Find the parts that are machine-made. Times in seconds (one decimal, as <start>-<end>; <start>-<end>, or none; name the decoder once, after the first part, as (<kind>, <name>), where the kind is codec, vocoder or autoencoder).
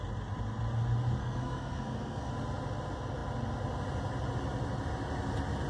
1.2-2.3 (codec, SNAC)